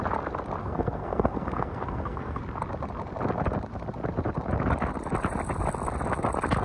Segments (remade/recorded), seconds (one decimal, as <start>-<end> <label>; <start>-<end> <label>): 0.0-0.6 recorded; 0.6-2.4 remade; 2.4-6.6 recorded